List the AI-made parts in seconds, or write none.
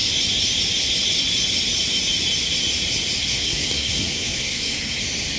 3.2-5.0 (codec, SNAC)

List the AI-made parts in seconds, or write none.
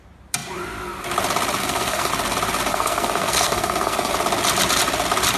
1.6-2.1 (codec, SNAC); 2.7-4.1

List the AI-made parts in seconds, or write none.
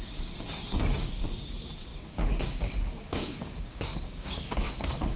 0.0-5.2 (codec, DAC)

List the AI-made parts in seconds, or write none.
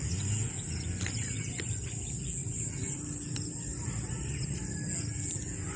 2.4-4.6 (vocoder, BigVGAN v2)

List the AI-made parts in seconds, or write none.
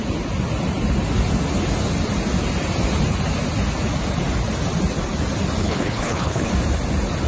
5.6-6.5 (codec, HILCodec)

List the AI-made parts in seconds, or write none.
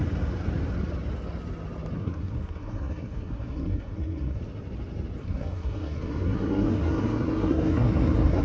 2.0-4.4 (codec, SNAC); 5.2-8.4